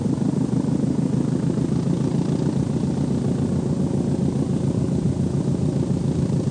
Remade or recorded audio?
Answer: recorded